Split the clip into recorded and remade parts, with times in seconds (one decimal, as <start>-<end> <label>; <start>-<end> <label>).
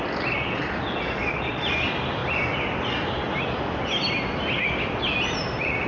0.0-5.9 recorded